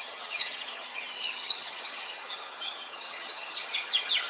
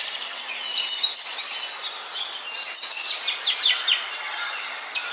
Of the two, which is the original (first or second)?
second